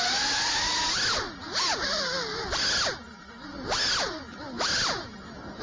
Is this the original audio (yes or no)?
yes